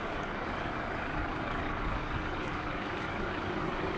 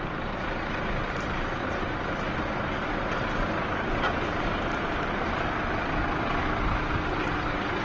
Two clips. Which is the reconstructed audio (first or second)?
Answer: first